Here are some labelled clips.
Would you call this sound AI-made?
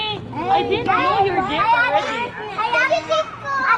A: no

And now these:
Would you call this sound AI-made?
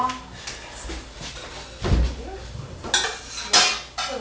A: no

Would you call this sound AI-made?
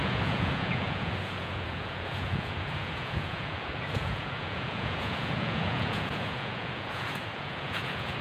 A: yes